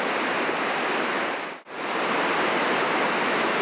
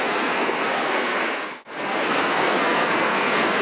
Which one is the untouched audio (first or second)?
first